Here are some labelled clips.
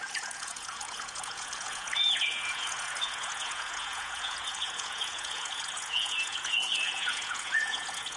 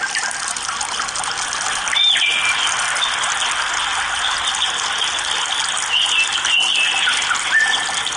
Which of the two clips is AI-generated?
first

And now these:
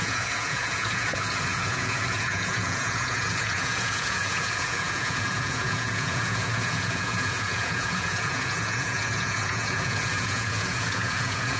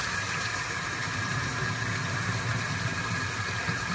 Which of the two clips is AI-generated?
first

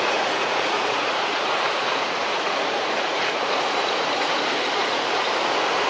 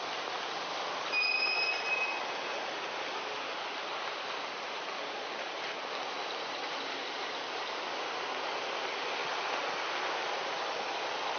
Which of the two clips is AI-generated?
first